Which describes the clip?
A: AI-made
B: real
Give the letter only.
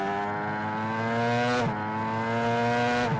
B